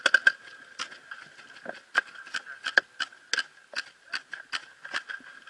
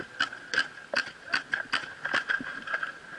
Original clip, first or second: first